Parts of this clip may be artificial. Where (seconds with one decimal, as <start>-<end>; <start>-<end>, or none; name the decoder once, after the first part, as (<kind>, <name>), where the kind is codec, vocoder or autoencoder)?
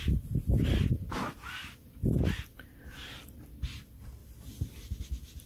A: none